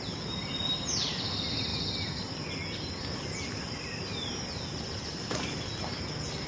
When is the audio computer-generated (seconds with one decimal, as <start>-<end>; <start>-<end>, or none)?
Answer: none